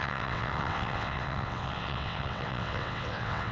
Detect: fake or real fake